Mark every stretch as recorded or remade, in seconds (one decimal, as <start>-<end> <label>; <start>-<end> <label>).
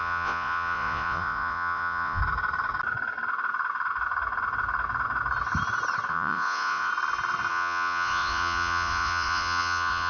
0.0-2.2 remade; 2.2-6.1 recorded; 6.1-6.9 remade; 6.9-7.5 recorded; 7.5-10.1 remade